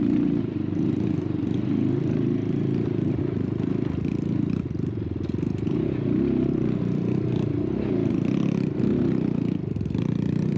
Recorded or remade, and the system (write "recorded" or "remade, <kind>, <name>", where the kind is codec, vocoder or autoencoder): recorded